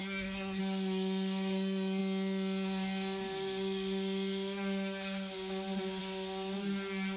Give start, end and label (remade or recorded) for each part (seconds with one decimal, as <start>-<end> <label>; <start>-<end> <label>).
0.0-0.6 remade; 0.6-7.2 recorded